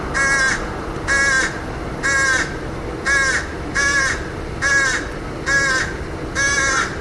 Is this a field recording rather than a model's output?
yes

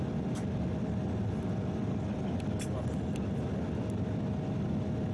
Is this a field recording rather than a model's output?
yes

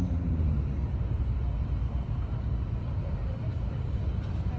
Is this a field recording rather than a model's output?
yes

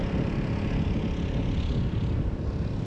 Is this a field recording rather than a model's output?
yes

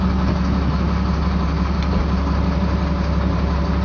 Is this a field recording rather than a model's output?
yes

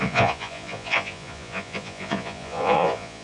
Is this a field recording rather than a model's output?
no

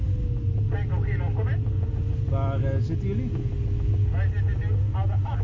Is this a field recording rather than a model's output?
yes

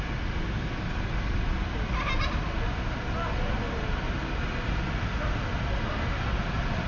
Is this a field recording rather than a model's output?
yes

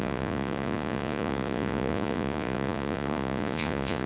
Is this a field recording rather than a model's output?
no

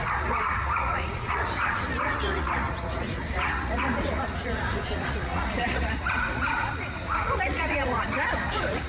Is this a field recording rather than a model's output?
no